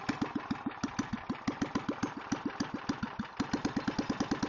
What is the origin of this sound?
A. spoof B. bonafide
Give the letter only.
B